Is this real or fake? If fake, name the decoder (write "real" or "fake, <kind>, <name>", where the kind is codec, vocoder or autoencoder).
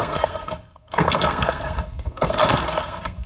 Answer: fake, codec, SNAC